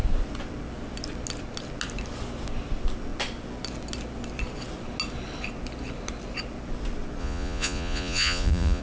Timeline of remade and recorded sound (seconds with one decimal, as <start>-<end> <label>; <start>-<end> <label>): 0.0-7.2 recorded; 7.2-8.8 remade

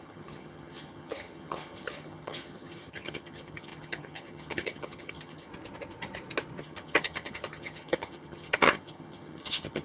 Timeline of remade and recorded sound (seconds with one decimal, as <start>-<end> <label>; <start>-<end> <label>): 0.0-5.5 remade; 5.5-6.6 recorded; 6.6-9.8 remade